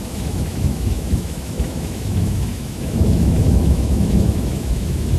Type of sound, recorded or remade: remade